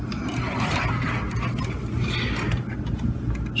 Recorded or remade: recorded